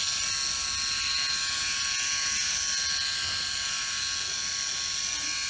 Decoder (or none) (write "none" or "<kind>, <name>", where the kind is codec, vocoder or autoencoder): none